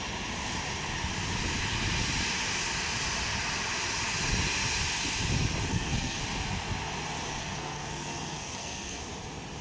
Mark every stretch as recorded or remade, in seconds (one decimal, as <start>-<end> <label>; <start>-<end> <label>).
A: 0.0-5.7 recorded; 5.7-6.2 remade; 6.2-7.4 recorded; 7.4-9.0 remade; 9.0-9.6 recorded